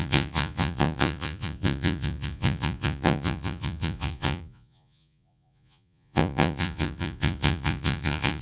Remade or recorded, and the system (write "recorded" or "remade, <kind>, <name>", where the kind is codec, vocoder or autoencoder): remade, vocoder, Vocos